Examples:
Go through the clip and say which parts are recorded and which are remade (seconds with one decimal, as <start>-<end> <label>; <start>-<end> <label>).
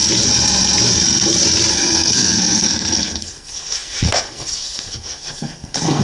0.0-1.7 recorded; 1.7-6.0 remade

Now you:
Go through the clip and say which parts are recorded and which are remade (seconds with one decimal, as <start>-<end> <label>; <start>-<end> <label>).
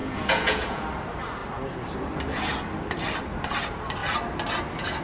0.0-0.8 remade; 0.8-5.0 recorded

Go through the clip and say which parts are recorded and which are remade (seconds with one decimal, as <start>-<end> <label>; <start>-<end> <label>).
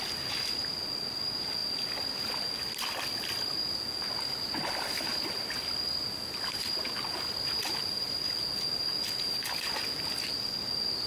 0.0-11.1 recorded